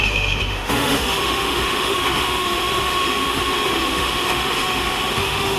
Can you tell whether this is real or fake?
fake